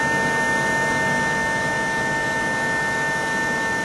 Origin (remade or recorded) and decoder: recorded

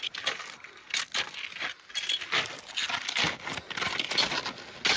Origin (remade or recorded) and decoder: recorded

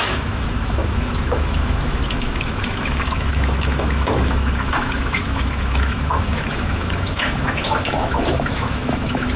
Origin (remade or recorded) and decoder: remade, autoencoder, DAC-VAE